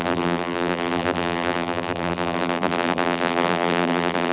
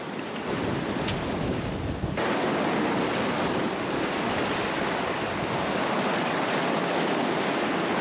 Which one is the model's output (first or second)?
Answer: first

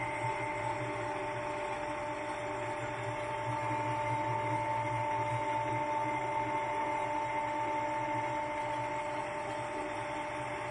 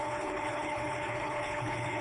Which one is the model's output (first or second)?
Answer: second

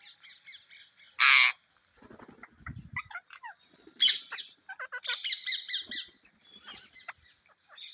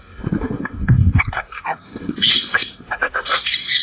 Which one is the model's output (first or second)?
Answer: second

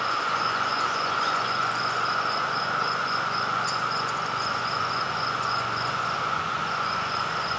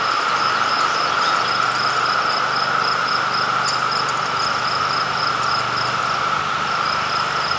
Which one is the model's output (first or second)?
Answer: first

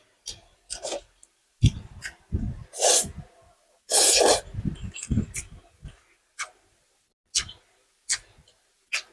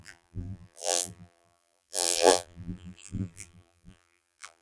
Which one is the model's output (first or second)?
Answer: second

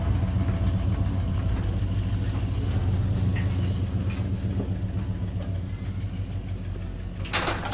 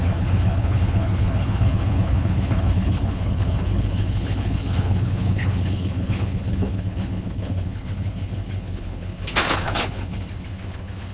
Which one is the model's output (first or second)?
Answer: second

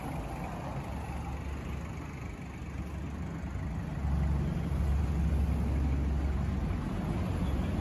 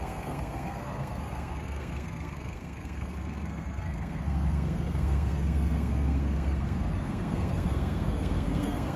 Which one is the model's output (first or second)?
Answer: second